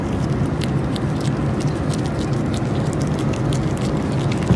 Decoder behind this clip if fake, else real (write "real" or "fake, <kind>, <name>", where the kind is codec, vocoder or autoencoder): real